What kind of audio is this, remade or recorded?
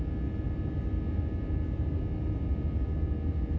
recorded